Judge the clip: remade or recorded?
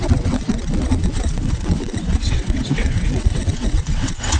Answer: remade